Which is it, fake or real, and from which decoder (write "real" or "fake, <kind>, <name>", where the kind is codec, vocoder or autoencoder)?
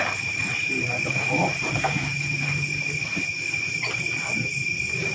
fake, vocoder, BigVGAN v2